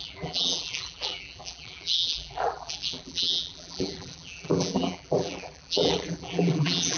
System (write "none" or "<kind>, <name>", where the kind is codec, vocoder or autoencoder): vocoder, BigVGAN v2